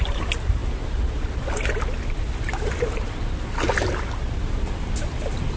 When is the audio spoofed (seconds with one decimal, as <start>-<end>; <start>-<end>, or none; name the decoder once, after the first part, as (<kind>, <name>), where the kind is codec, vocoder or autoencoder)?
none